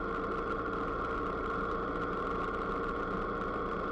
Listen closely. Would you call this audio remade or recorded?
recorded